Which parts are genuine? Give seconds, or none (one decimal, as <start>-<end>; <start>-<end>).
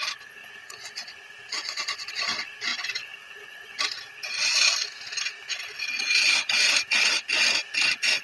0.0-0.4; 2.1-2.7; 3.8-8.2